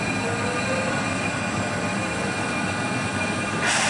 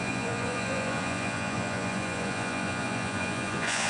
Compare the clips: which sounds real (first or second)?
first